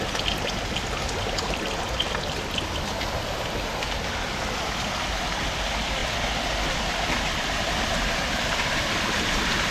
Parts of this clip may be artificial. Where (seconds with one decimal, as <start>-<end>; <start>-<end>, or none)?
none